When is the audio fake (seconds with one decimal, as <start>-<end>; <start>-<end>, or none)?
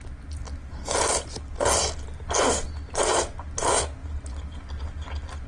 none